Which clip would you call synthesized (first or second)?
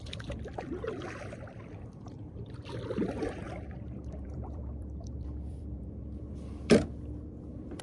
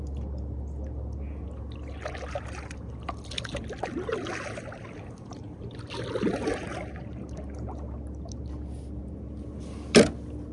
first